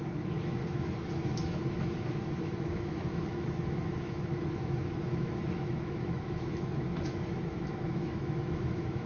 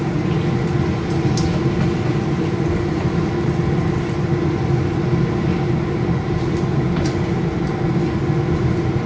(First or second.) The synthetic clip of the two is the first